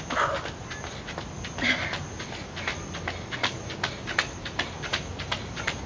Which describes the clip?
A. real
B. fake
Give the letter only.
A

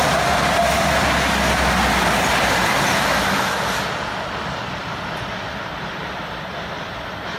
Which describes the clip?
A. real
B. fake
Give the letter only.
A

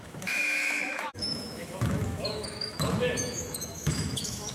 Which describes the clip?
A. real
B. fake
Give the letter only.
B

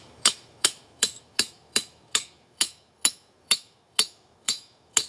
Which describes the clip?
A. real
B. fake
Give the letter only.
B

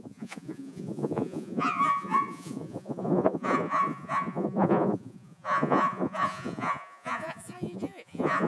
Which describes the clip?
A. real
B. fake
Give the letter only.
B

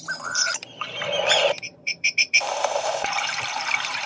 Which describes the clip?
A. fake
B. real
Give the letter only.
A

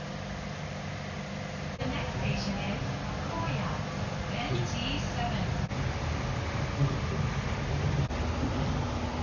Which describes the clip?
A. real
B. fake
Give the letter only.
A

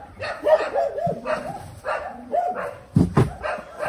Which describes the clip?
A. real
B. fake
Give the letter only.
A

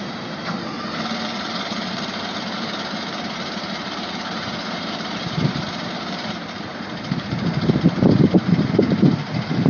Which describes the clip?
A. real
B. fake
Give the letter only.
B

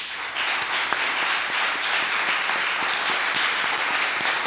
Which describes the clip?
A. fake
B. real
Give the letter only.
B